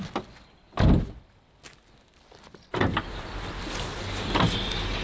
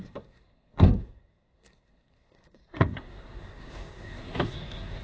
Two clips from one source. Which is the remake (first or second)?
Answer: second